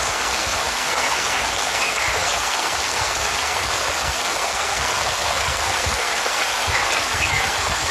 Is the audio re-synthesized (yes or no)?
yes